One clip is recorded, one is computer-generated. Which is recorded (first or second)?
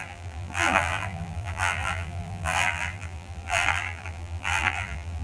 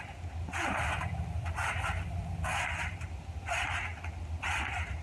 second